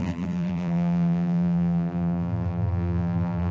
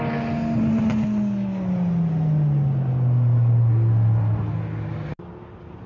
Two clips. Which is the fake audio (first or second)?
first